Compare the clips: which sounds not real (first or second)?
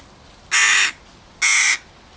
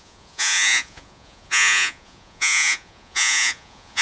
second